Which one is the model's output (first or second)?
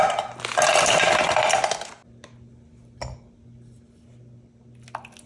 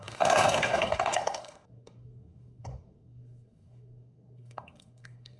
second